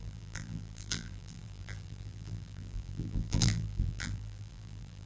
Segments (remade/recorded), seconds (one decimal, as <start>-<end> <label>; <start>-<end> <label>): 0.0-5.1 remade